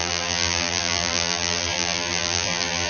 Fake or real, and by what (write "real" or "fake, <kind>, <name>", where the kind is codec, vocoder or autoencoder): fake, vocoder, BigVGAN v2